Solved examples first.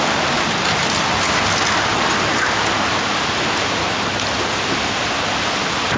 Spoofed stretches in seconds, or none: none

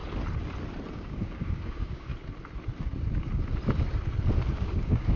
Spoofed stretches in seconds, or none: 0.9-2.1 (codec, DAC); 4.5-5.2

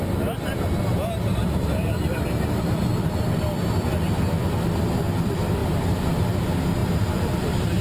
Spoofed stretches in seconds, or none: 1.3-2.6 (vocoder, BigVGAN v2); 5.6-6.2; 6.8-7.8

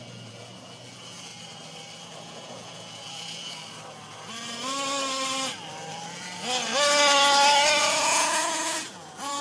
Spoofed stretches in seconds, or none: 0.0-1.3 (vocoder, Vocos); 2.1-3.6; 7.8-9.4

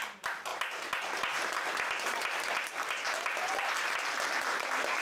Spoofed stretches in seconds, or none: none

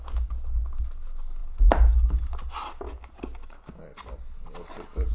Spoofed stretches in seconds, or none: none